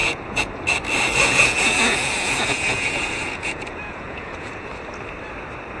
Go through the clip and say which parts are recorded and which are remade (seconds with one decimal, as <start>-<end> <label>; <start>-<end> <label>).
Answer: 0.0-0.5 remade; 0.5-1.2 recorded; 1.2-4.7 remade; 4.7-5.8 recorded